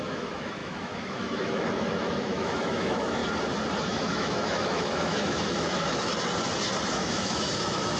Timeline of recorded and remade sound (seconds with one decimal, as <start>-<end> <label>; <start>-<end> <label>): 0.0-3.2 remade; 3.2-3.8 recorded; 3.8-6.1 remade; 6.1-6.9 recorded; 6.9-8.0 remade